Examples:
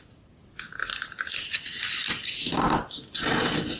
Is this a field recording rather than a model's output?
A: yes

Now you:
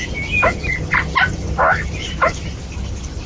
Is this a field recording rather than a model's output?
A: yes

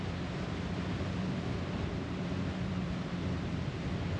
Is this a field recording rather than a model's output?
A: no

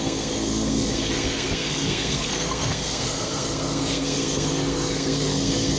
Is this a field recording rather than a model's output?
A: no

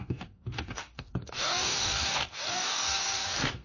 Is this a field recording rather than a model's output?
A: no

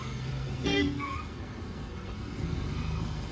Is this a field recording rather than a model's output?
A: no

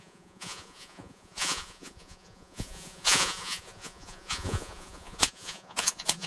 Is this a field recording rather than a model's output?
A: no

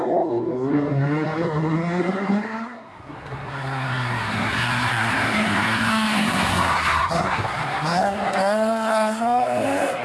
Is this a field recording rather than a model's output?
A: no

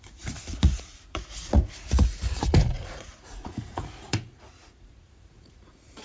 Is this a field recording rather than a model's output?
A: no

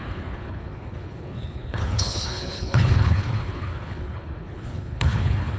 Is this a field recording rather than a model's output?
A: no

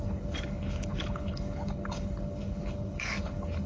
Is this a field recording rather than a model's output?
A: no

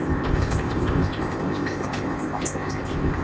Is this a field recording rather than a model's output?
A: no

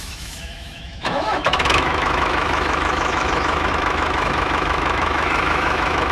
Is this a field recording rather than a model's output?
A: no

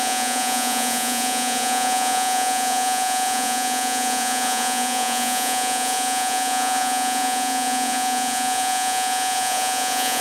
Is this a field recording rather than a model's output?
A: no